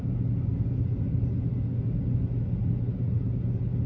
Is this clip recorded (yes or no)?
yes